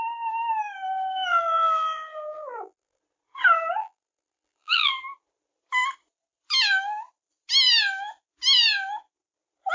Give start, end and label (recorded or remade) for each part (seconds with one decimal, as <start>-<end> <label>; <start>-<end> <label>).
0.0-1.3 recorded; 1.3-3.0 remade; 3.0-3.8 recorded; 3.8-4.9 remade; 4.9-9.7 recorded

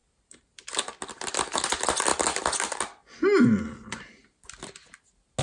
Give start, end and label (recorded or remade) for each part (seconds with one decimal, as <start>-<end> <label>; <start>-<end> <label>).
0.0-5.4 recorded

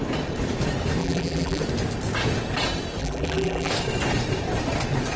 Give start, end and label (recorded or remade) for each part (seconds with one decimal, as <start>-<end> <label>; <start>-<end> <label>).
0.0-1.0 recorded; 1.0-1.6 remade; 1.6-3.0 recorded; 3.0-3.7 remade; 3.7-5.2 recorded

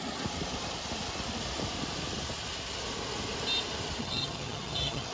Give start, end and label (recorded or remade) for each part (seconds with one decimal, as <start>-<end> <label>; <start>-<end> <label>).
0.0-4.0 recorded; 4.0-5.1 remade

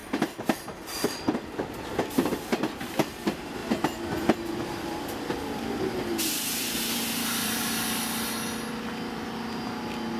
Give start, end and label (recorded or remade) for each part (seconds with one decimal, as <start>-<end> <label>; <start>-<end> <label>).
0.0-3.6 recorded; 3.6-8.0 remade; 8.0-10.2 recorded

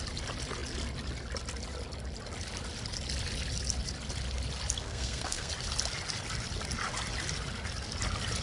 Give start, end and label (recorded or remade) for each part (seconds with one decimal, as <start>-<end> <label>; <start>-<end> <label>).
0.0-4.8 recorded; 4.8-5.5 remade; 5.5-8.4 recorded

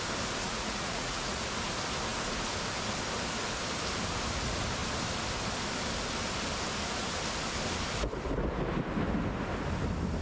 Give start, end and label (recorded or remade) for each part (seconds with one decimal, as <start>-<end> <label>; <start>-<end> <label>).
0.0-0.4 recorded; 0.4-1.5 remade; 1.5-10.2 recorded